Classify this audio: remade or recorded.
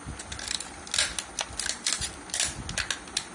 recorded